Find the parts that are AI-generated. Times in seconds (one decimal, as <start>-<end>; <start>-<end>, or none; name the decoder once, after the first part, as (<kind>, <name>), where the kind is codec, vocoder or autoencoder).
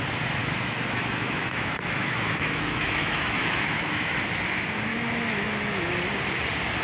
0.4-4.1 (autoencoder, DAC-VAE); 4.9-5.9